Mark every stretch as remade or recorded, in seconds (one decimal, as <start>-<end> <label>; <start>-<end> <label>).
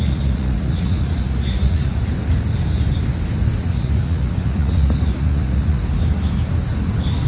0.0-2.0 remade; 2.0-3.6 recorded; 3.6-5.8 remade; 5.8-7.3 recorded